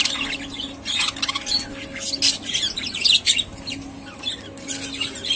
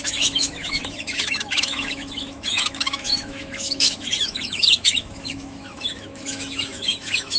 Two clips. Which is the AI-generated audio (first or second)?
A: second